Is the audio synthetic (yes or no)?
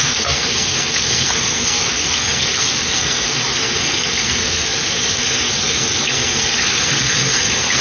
yes